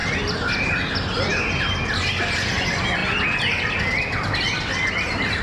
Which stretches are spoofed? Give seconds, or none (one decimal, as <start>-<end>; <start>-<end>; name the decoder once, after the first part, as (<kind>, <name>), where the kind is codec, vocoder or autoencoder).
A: none

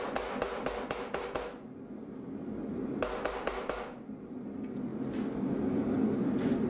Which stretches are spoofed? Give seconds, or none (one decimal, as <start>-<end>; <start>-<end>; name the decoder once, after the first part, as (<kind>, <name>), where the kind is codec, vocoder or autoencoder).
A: none

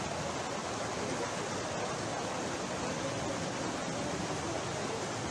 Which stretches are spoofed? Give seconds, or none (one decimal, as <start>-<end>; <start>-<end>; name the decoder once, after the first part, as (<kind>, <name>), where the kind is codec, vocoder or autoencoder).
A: none

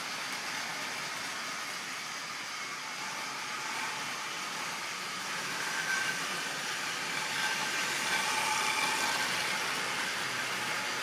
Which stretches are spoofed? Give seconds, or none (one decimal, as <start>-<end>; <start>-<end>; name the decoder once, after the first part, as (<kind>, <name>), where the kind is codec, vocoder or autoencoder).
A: none

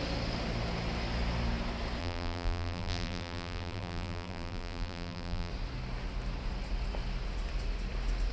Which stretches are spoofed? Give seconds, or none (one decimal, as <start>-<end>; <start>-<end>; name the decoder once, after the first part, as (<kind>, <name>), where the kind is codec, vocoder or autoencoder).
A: 2.0-5.5 (vocoder, BigVGAN v2)

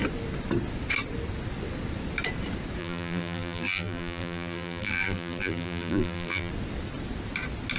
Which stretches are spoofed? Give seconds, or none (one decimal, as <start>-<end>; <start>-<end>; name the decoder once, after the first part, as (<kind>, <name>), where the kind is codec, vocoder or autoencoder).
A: 2.8-6.5 (vocoder, BigVGAN v2)

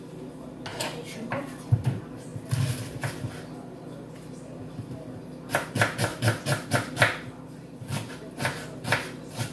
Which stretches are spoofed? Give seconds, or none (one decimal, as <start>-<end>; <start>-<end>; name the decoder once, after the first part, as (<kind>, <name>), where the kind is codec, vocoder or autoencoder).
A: 0.7-1.3 (vocoder, BigVGAN v2); 6.1-8.1